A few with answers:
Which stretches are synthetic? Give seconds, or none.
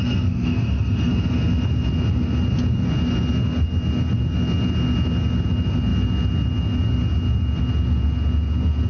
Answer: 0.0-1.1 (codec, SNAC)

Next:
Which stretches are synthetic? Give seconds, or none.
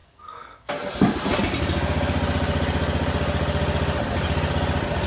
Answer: 0.0-0.7 (codec, SNAC)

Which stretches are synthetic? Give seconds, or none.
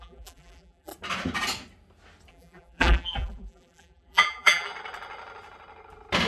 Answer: 0.0-0.9 (vocoder, BigVGAN v2); 2.3-4.7